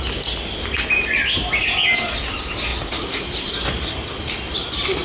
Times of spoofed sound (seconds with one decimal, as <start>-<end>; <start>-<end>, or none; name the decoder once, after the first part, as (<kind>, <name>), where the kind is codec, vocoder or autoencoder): 2.7-3.5 (vocoder, BigVGAN v2)